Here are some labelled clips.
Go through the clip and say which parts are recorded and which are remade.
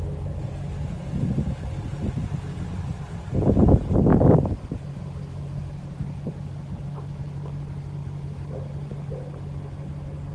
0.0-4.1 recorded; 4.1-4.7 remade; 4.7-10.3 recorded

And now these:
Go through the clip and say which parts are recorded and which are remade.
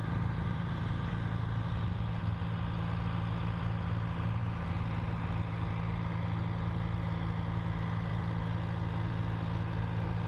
0.0-1.1 remade; 1.1-10.3 recorded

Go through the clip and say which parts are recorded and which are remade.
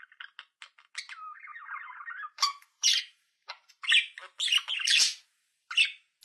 0.0-1.5 recorded; 1.5-3.8 remade; 3.8-6.2 recorded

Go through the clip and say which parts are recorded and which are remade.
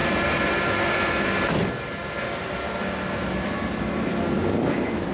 0.0-1.6 remade; 1.6-5.1 recorded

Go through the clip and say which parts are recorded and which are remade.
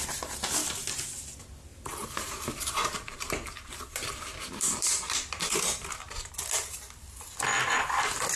0.0-1.7 recorded; 1.7-6.3 remade; 6.3-8.4 recorded